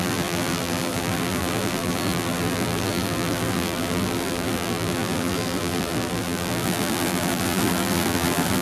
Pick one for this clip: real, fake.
fake